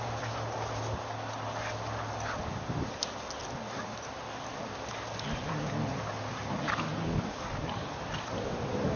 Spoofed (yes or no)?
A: no